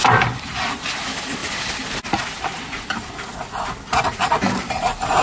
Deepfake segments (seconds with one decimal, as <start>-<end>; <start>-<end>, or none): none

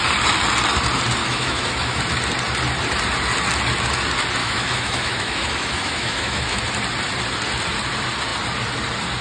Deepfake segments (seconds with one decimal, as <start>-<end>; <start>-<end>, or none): 1.2-2.0; 4.4-6.6

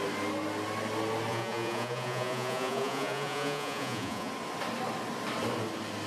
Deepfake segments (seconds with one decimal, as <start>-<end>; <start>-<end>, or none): 1.3-4.3

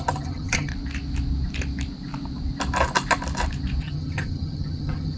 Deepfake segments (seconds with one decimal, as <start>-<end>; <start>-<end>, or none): 0.0-0.7; 3.8-5.2

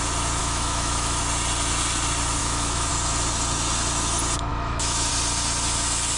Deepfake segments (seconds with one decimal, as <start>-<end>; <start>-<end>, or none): 0.4-1.2; 2.4-2.9; 4.5-5.1

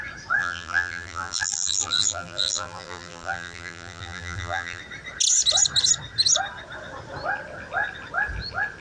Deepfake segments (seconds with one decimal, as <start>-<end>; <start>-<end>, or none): 0.4-4.8